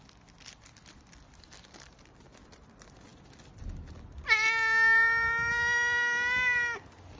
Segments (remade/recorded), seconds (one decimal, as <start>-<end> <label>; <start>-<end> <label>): 0.0-7.2 recorded